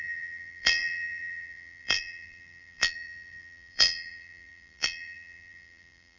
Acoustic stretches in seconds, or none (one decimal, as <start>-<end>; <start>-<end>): none